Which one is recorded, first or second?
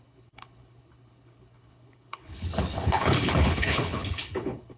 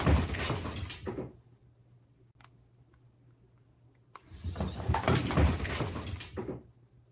second